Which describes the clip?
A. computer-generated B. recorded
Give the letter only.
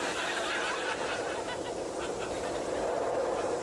B